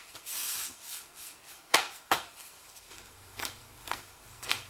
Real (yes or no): no